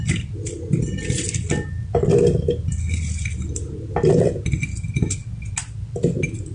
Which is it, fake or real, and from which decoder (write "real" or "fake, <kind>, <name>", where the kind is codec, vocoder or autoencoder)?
real